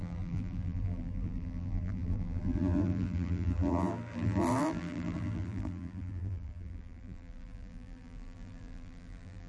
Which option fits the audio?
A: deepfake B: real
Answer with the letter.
A